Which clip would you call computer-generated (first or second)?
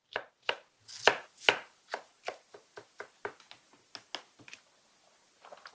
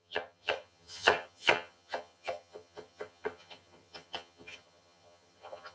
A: second